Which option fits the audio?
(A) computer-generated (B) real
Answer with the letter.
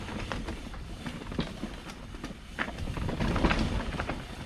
B